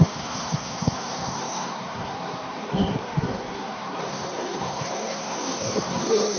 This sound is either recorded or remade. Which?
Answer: remade